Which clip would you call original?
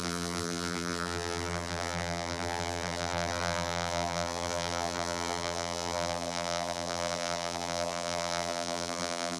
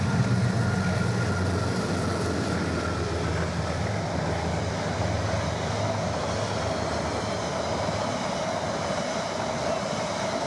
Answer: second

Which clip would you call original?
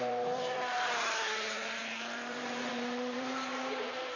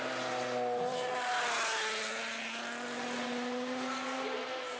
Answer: second